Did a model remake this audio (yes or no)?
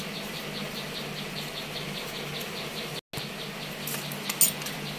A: no